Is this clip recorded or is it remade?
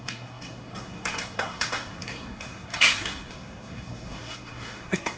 remade